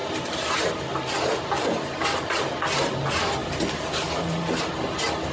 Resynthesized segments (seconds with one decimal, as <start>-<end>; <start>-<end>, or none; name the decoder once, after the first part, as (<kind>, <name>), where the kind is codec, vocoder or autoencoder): 0.0-2.6 (vocoder, BigVGAN v2); 3.4-4.7